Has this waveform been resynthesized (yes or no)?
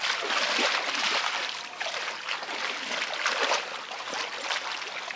no